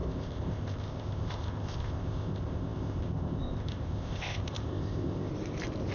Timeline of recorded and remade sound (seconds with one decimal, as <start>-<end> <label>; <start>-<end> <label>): 0.0-5.3 remade; 5.3-5.9 recorded